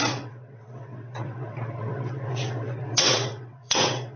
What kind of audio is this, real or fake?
fake